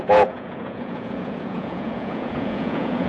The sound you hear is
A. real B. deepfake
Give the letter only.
B